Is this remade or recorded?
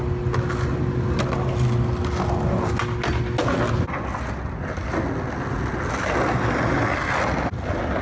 recorded